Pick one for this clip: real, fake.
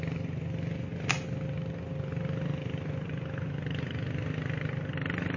real